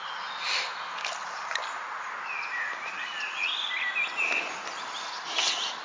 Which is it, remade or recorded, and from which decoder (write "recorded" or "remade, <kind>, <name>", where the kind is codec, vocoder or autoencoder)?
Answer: recorded